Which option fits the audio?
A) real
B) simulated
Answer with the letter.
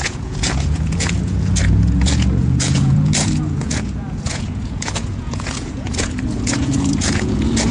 B